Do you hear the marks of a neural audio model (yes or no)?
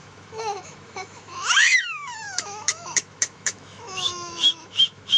yes